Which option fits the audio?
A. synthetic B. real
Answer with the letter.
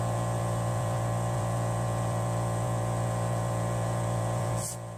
A